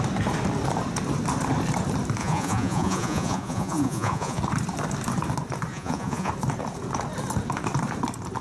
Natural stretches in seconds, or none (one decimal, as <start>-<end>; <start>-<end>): 0.0-2.2; 4.4-5.7; 6.3-8.4